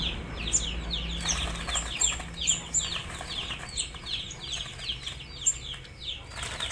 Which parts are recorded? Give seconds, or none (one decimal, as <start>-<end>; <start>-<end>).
0.0-6.7